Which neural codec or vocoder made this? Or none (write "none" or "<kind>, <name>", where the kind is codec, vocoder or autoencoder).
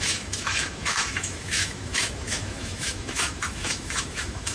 autoencoder, DAC-VAE